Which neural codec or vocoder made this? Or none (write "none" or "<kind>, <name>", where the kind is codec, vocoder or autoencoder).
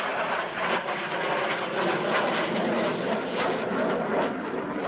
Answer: none